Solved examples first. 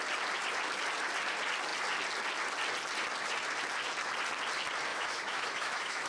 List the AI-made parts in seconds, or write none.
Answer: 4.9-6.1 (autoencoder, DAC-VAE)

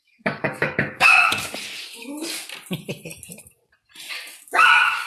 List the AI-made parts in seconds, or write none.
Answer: 0.0-1.3 (codec, DAC); 4.4-5.1

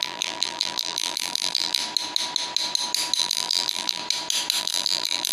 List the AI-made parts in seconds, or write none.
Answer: 0.0-1.8 (vocoder, BigVGAN v2); 3.2-4.0; 4.6-5.3

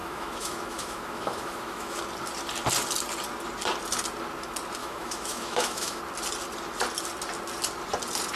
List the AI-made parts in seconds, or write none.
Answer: 0.0-2.0 (autoencoder, DAC-VAE); 4.8-6.0

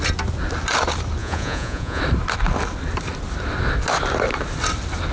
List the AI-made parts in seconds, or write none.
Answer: 1.2-2.0 (vocoder, Vocos)

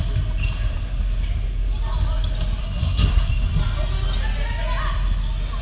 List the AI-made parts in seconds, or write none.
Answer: 2.6-3.3 (codec, SNAC)

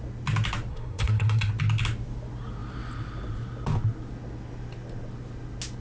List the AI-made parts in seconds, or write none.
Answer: 0.7-1.5 (codec, SNAC)

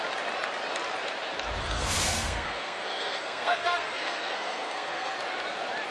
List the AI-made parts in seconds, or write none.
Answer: 1.6-5.1 (codec, SNAC)